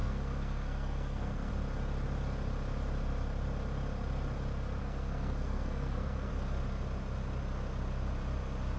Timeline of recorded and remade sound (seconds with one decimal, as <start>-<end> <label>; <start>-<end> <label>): 0.0-1.5 remade; 1.5-4.8 recorded; 4.8-6.3 remade; 6.3-8.8 recorded